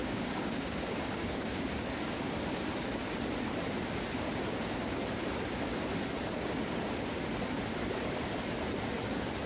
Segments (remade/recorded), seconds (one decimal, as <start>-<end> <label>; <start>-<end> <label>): 0.0-1.6 remade; 1.6-9.5 recorded